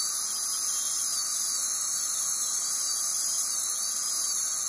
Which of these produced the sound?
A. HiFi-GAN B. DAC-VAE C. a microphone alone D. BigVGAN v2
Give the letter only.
C